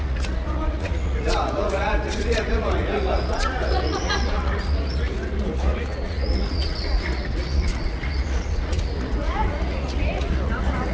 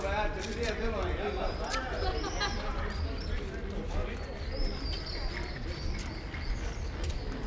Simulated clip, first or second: first